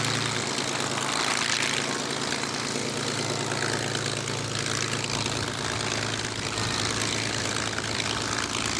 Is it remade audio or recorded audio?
recorded